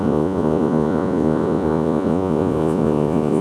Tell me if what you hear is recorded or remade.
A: remade